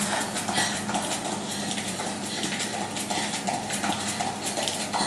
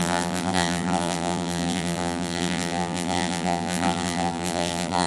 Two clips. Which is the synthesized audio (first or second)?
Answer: second